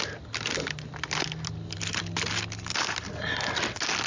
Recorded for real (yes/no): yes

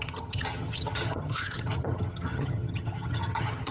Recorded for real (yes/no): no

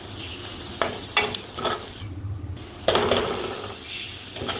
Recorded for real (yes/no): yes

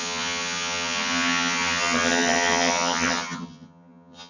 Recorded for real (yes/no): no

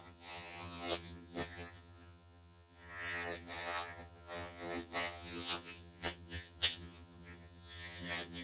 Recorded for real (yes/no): no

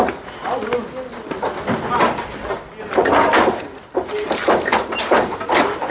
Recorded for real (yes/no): yes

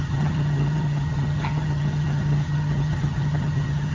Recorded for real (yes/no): no